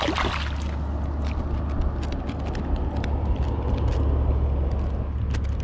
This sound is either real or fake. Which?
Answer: real